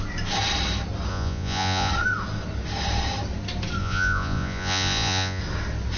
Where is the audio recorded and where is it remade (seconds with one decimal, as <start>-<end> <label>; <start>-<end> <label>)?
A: 0.0-1.1 recorded; 1.1-1.9 remade; 1.9-3.8 recorded; 3.8-5.4 remade; 5.4-6.0 recorded